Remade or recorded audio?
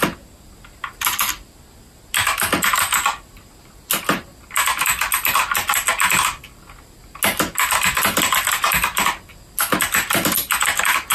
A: recorded